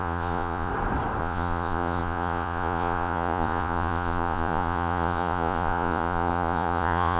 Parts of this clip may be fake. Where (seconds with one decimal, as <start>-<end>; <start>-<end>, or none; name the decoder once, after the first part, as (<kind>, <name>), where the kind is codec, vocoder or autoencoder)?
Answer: 0.0-0.7 (vocoder, Vocos); 1.2-7.2